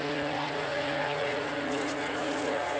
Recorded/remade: remade